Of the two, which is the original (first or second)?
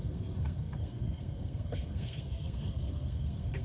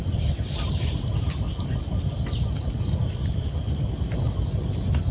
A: second